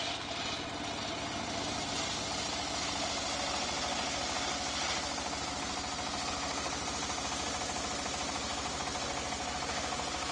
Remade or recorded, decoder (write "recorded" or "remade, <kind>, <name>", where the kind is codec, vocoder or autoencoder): recorded